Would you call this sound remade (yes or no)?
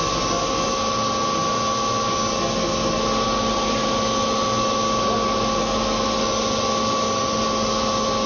no